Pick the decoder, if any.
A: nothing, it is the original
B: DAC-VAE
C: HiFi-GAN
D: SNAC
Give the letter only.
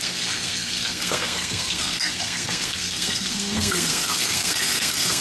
D